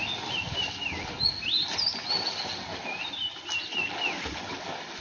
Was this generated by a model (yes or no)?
no